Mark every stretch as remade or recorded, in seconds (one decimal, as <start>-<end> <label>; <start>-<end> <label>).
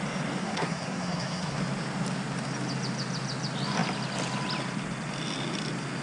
0.0-0.4 recorded; 0.4-1.6 remade; 1.6-6.0 recorded